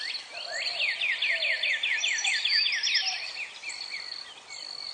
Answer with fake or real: real